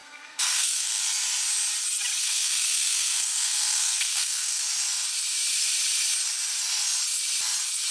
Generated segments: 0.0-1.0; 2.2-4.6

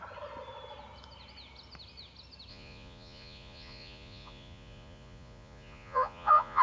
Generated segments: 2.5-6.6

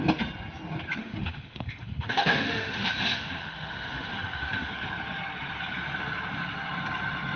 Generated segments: 1.0-4.7

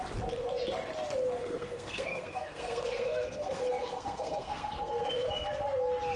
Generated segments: 1.4-5.1